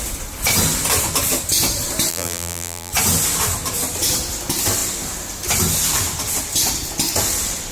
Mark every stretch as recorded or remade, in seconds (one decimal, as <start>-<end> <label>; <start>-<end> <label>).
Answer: 0.0-2.1 recorded; 2.1-2.9 remade; 2.9-7.7 recorded